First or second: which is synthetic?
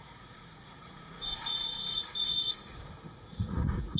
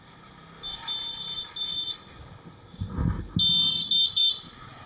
first